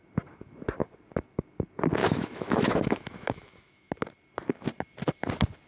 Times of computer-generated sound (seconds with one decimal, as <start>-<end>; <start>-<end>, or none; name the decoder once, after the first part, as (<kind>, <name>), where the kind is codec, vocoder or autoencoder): 2.0-3.9 (autoencoder, DAC-VAE)